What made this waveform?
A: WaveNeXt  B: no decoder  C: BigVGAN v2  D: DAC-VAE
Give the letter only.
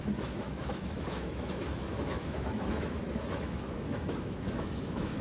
D